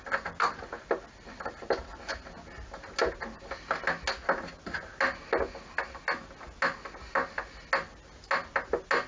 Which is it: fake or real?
real